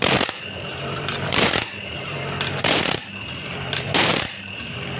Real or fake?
fake